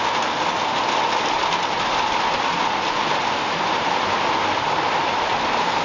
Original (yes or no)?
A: yes